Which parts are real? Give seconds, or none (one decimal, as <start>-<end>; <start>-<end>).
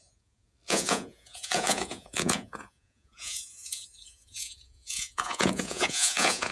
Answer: none